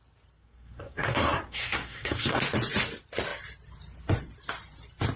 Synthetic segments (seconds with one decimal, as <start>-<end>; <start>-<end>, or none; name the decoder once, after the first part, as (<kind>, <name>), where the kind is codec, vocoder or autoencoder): 0.4-2.4 (codec, SNAC)